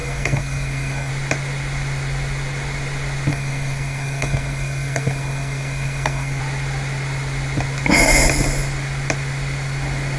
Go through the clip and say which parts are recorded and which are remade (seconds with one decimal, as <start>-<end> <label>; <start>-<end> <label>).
0.0-1.1 remade; 1.1-3.3 recorded; 3.3-6.4 remade; 6.4-10.2 recorded